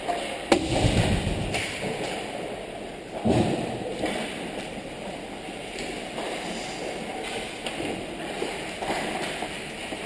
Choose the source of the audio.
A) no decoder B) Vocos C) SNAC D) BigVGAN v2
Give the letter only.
D